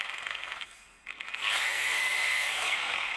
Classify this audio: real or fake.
fake